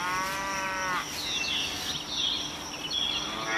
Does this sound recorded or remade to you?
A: recorded